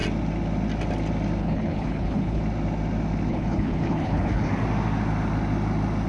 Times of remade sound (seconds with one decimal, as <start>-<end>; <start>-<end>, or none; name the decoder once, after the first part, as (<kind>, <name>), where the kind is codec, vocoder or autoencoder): 1.4-2.4 (codec, HILCodec); 3.3-4.5